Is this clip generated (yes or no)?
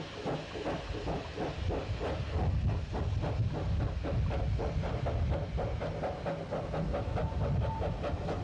no